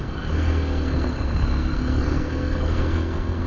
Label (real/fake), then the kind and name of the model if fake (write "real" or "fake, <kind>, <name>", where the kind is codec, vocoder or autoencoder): fake, codec, SNAC